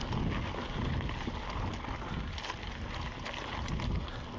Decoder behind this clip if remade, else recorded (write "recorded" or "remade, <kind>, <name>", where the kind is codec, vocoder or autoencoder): recorded